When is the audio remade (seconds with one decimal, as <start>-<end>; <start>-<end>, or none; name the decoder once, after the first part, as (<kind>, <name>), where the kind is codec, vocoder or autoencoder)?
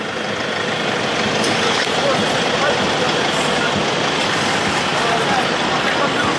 none